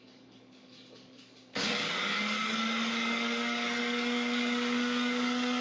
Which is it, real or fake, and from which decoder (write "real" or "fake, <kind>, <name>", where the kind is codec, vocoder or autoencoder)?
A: fake, codec, DAC